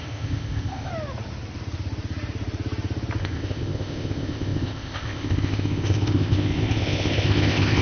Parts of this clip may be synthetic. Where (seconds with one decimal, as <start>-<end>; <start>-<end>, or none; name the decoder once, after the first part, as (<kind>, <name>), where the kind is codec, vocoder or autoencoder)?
0.0-0.9 (codec, ZipCodec); 3.2-7.8